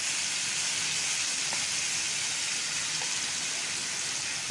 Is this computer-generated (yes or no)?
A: no